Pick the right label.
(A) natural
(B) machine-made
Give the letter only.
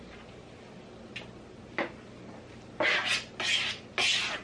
A